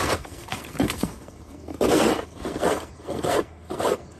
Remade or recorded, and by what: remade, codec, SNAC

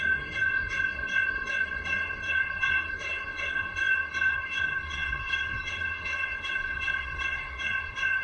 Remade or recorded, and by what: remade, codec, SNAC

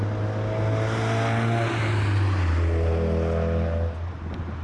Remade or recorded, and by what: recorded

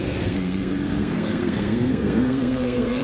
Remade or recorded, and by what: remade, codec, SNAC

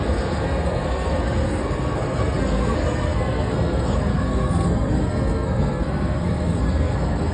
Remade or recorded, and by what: remade, codec, SNAC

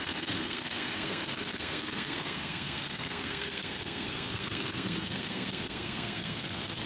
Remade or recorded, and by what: remade, codec, SNAC